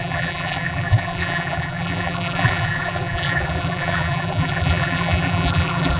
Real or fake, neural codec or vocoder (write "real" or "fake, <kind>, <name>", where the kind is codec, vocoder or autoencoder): fake, vocoder, BigVGAN v2